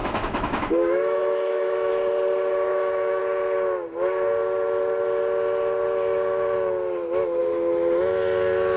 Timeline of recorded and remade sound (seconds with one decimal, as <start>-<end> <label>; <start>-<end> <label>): 0.0-1.9 remade; 1.9-2.7 recorded; 2.7-3.2 remade; 3.2-8.8 recorded